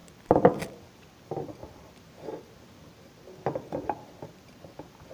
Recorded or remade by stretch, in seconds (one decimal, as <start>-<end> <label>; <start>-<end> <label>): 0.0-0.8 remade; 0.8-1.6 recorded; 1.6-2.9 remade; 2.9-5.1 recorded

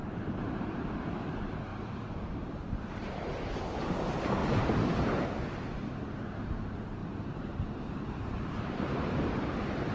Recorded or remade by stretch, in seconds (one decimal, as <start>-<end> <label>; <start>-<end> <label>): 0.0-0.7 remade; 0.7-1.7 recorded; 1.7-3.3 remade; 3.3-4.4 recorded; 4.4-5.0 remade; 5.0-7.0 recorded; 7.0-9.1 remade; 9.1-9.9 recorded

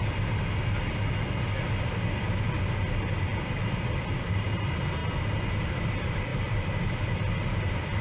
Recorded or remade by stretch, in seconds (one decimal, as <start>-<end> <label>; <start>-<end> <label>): 0.0-5.0 remade; 5.0-5.6 recorded; 5.6-8.0 remade